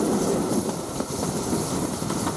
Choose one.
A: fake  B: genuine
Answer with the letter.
B